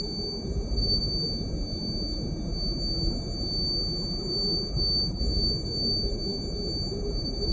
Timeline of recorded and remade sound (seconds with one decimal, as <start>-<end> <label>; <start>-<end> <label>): 0.0-7.5 recorded